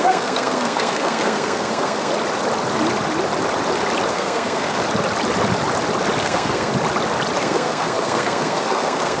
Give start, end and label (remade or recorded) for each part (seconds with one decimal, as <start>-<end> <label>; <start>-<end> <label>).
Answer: 0.0-2.1 remade; 2.1-4.1 recorded; 4.1-4.8 remade; 4.8-6.2 recorded; 6.2-6.7 remade; 6.7-7.4 recorded; 7.4-9.2 remade